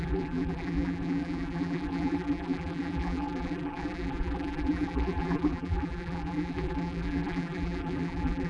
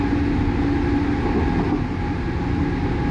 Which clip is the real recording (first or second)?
second